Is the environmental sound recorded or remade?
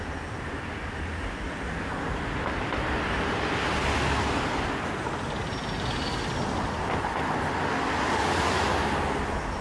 recorded